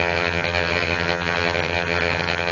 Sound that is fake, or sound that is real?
fake